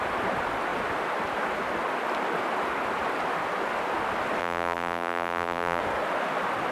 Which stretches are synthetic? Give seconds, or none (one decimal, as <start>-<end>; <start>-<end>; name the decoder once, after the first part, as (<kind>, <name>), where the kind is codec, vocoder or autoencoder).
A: 4.4-5.8 (vocoder, BigVGAN v2)